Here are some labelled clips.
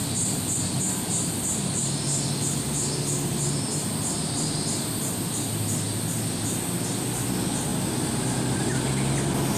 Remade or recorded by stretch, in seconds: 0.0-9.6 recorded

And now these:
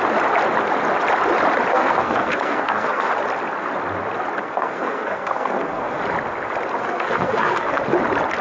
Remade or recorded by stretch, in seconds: 0.0-1.7 recorded; 1.7-3.1 remade; 3.1-4.4 recorded; 4.4-6.0 remade; 6.0-6.8 recorded; 6.8-7.8 remade; 7.8-8.4 recorded

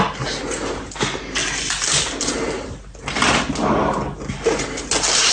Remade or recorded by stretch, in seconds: 0.0-5.3 recorded